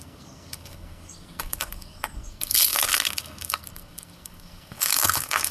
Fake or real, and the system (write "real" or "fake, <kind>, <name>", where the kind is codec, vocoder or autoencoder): fake, codec, SNAC